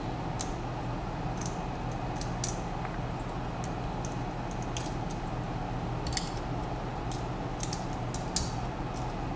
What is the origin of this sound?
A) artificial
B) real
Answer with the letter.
B